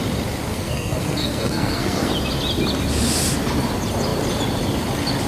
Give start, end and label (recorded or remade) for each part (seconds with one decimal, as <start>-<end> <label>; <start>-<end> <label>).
0.0-0.5 recorded; 0.5-2.1 remade; 2.1-5.3 recorded